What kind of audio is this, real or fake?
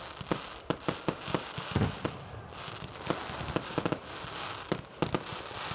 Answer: real